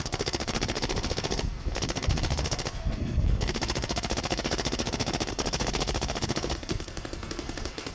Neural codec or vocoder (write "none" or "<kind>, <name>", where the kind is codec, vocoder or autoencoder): codec, SNAC